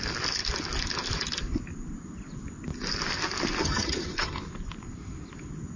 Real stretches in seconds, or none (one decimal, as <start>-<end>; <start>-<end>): 0.0-3.6; 4.4-5.8